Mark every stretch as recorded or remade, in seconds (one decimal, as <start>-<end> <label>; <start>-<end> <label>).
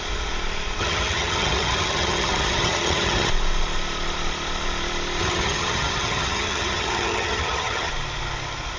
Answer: 0.0-0.8 recorded; 0.8-3.3 remade; 3.3-5.2 recorded; 5.2-7.9 remade; 7.9-8.8 recorded